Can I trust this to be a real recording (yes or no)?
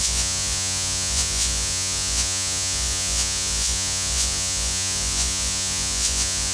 no